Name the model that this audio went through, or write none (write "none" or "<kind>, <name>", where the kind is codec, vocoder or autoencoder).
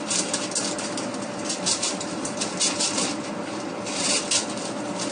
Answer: none